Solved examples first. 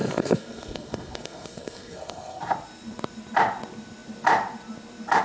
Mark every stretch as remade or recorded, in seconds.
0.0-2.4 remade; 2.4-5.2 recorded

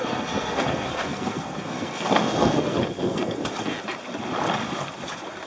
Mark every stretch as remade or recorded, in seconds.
0.0-3.4 remade; 3.4-5.5 recorded

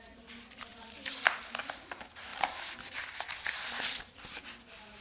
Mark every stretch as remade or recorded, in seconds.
0.0-5.0 recorded

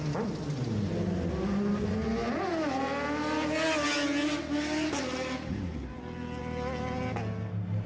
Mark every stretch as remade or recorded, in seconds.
0.0-7.9 recorded

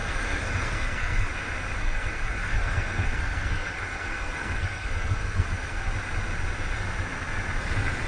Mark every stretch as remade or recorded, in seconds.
0.0-1.3 remade; 1.3-1.8 recorded; 1.8-5.9 remade; 5.9-8.1 recorded